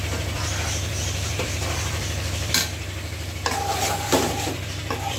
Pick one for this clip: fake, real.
fake